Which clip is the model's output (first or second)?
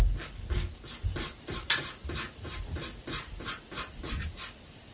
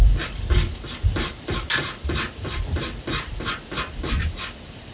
second